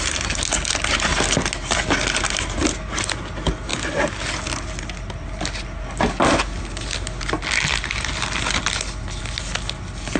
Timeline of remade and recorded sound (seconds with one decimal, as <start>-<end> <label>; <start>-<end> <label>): 0.0-10.2 recorded